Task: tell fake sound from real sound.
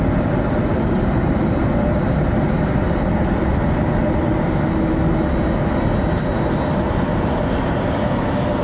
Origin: real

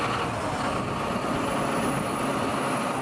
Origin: real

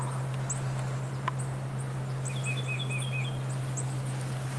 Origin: real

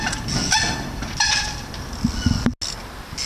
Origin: real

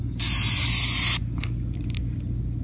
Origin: real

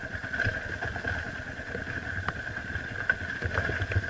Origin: fake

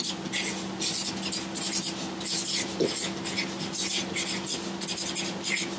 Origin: real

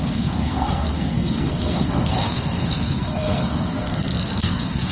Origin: fake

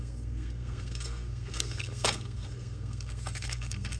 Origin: fake